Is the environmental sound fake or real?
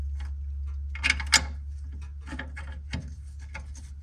real